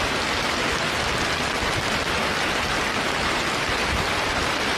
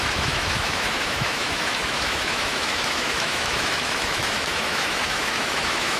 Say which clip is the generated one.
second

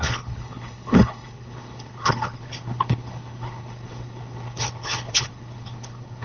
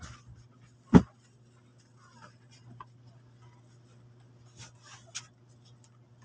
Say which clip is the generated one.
first